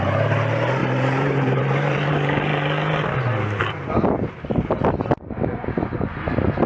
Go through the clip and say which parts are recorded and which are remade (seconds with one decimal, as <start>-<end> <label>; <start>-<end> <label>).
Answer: 0.0-0.8 recorded; 0.8-2.1 remade; 2.1-6.7 recorded